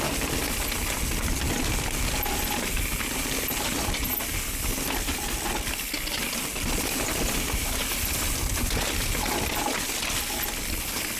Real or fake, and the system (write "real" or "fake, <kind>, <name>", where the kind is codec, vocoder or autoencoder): real